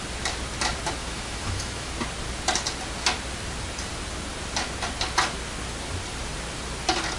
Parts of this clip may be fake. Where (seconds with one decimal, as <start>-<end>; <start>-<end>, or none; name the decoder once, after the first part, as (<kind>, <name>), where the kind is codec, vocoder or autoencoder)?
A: 1.0-1.9 (autoencoder, DAC-VAE)